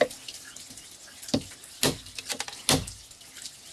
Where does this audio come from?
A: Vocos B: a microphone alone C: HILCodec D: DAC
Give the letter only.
B